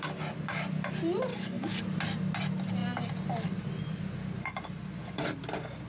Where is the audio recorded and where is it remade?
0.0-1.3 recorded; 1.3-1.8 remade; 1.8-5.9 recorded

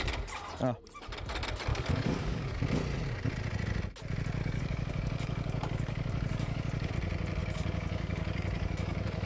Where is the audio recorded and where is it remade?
0.0-1.7 recorded; 1.7-2.6 remade; 2.6-4.4 recorded; 4.4-6.9 remade; 6.9-7.4 recorded; 7.4-9.3 remade

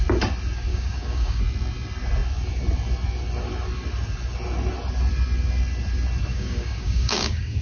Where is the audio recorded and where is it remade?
0.0-0.7 recorded; 0.7-1.4 remade; 1.4-6.3 recorded; 6.3-7.6 remade

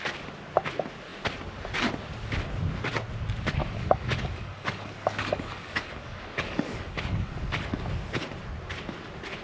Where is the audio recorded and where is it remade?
0.0-3.6 recorded; 3.6-7.8 remade; 7.8-9.4 recorded

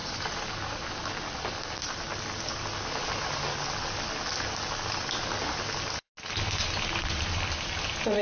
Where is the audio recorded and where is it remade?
0.0-8.2 recorded

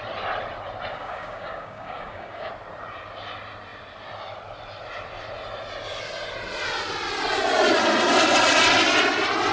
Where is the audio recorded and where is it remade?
0.0-0.9 recorded; 0.9-2.5 remade; 2.5-9.5 recorded

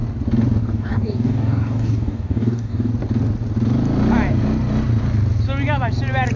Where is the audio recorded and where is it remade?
0.0-0.6 recorded; 0.6-2.9 remade; 2.9-6.4 recorded